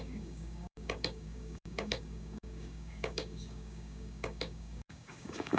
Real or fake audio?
fake